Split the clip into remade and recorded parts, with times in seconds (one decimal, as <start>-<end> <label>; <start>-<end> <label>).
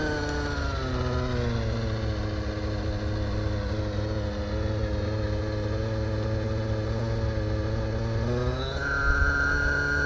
0.0-10.1 recorded